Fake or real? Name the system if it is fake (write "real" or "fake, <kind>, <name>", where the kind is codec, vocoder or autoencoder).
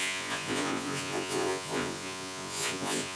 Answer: fake, vocoder, Vocos